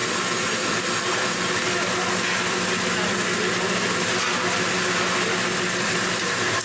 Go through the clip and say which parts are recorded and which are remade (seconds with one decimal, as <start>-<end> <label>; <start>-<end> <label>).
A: 0.0-6.6 recorded